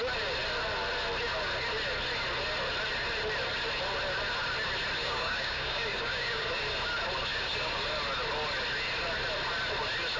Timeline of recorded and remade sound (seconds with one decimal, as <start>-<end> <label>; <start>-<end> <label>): 0.0-5.0 recorded; 5.0-6.5 remade; 6.5-7.3 recorded; 7.3-7.8 remade; 7.8-10.2 recorded